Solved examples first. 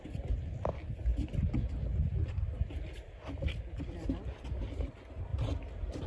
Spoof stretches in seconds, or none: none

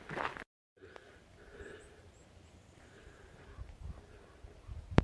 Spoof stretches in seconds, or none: 1.5-3.9 (vocoder, BigVGAN v2)

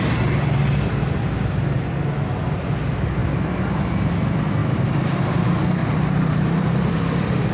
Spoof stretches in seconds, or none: 4.6-5.3 (vocoder, BigVGAN v2); 5.8-7.5

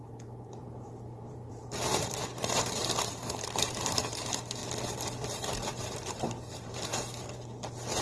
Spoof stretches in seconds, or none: 0.0-4.6 (vocoder, BigVGAN v2); 5.5-6.9

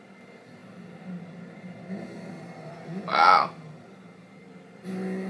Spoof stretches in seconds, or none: 0.0-0.6 (vocoder, BigVGAN v2); 3.8-5.3

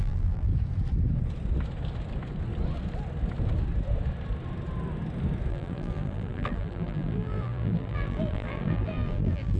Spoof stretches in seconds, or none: 0.0-0.5 (vocoder, BigVGAN v2); 5.5-9.6